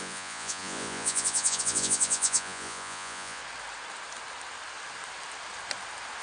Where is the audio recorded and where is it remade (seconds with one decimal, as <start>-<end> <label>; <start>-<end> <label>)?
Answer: 0.0-3.4 remade; 3.4-6.2 recorded

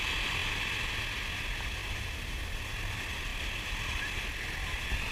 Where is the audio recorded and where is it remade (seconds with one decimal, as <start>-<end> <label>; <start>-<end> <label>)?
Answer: 0.0-1.8 recorded; 1.8-2.6 remade; 2.6-5.1 recorded